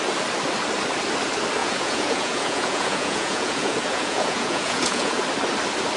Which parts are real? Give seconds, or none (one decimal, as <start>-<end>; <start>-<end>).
0.0-1.6; 5.2-6.0